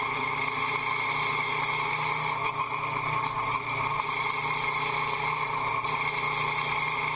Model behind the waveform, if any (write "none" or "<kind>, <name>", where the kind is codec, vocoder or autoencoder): none